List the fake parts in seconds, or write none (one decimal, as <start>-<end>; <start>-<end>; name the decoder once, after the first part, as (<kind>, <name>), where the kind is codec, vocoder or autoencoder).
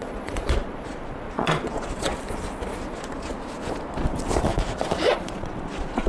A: 0.0-2.1 (vocoder, Vocos); 2.8-3.3; 4.4-6.1